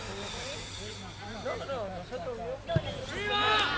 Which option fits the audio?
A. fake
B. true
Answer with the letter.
B